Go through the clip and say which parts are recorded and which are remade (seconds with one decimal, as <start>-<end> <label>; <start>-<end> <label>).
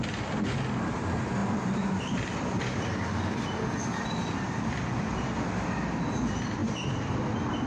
0.0-6.6 recorded; 6.6-7.2 remade; 7.2-7.7 recorded